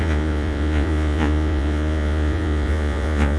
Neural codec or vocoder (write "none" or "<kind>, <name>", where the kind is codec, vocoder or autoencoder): vocoder, Vocos